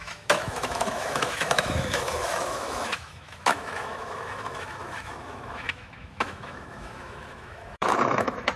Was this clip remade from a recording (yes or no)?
yes